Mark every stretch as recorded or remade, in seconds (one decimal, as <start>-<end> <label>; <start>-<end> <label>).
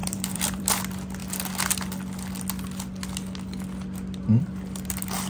0.0-0.7 remade; 0.7-5.3 recorded